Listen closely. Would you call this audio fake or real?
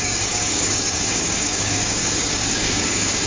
fake